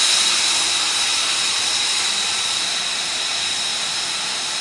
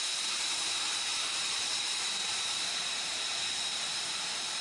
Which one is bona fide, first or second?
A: first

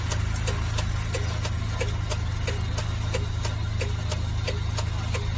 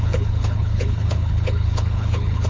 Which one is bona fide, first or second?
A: first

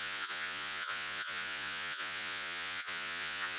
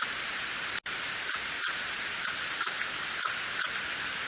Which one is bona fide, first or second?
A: second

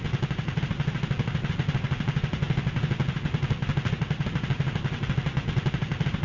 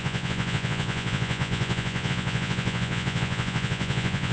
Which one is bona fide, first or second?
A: first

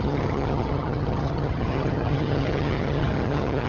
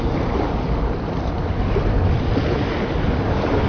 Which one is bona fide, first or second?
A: second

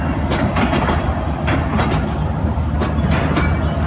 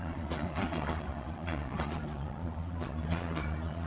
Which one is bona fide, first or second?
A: first